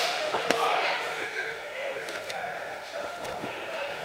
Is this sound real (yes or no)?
no